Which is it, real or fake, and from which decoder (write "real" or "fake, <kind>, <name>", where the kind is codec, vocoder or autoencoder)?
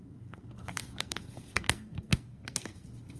fake, codec, SNAC